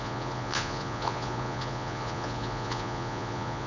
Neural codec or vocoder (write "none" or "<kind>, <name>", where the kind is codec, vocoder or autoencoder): vocoder, Vocos